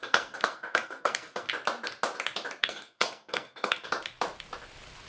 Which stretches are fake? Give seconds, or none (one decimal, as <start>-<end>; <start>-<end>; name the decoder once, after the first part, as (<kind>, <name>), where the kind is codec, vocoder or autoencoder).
0.0-1.5 (codec, SNAC); 2.6-3.9